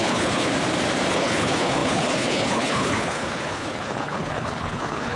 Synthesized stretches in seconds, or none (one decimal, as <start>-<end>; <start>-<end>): 0.0-0.5; 1.1-5.2